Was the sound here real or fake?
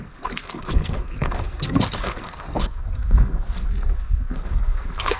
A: fake